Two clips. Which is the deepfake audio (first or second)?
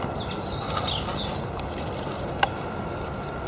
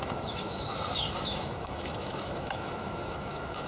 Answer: second